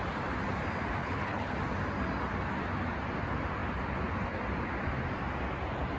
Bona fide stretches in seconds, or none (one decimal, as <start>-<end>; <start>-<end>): 0.0-1.0; 1.5-6.0